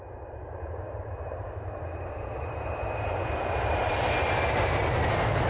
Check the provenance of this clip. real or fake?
fake